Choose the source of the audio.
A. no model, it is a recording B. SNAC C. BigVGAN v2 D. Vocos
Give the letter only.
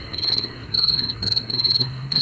B